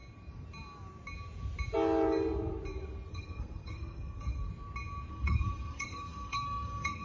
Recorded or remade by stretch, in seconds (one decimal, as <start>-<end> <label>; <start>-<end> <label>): 0.0-3.1 recorded; 3.1-4.5 remade; 4.5-5.1 recorded; 5.1-7.0 remade